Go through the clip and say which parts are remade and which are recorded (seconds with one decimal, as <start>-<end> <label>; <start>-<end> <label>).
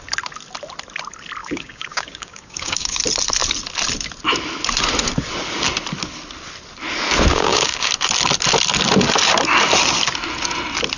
0.0-1.4 recorded; 1.4-3.0 remade; 3.0-7.3 recorded; 7.3-7.9 remade; 7.9-11.0 recorded